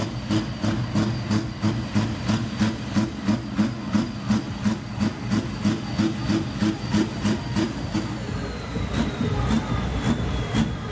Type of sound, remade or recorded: recorded